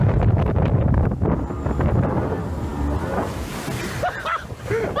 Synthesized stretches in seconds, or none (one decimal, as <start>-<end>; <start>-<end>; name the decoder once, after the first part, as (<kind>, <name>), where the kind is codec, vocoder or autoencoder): none